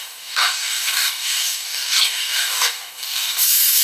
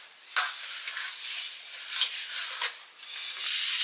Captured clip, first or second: second